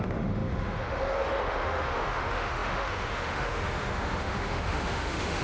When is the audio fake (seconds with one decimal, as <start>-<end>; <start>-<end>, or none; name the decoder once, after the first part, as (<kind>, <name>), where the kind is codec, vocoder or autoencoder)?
0.0-5.4 (autoencoder, DAC-VAE)